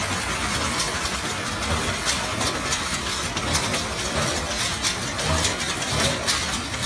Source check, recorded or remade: recorded